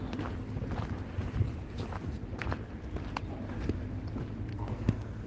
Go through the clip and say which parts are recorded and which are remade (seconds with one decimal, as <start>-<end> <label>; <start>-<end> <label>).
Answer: 0.0-4.5 recorded; 4.5-5.3 remade